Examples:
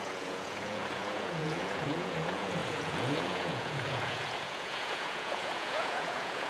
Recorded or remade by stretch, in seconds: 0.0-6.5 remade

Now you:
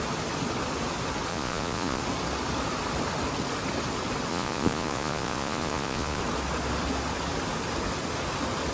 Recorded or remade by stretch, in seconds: 0.0-1.3 recorded; 1.3-2.0 remade; 2.0-4.3 recorded; 4.3-6.2 remade; 6.2-8.7 recorded

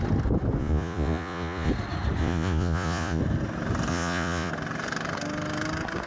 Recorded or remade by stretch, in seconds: 0.0-0.6 recorded; 0.6-1.7 remade; 1.7-2.2 recorded; 2.2-3.2 remade; 3.2-3.9 recorded; 3.9-4.5 remade; 4.5-6.1 recorded

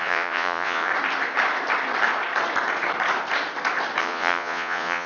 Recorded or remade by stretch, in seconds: 0.0-0.9 remade; 0.9-4.0 recorded; 4.0-5.1 remade

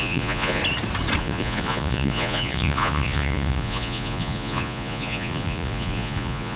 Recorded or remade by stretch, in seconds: 0.0-0.6 remade; 0.6-1.2 recorded; 1.2-6.6 remade

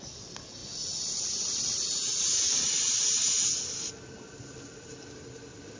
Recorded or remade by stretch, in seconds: 0.0-0.6 recorded; 0.6-2.9 remade; 2.9-5.8 recorded